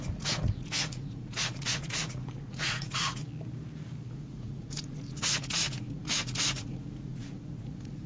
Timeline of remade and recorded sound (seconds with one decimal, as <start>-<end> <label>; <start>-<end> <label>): 0.0-3.2 remade; 3.2-4.1 recorded; 4.1-8.1 remade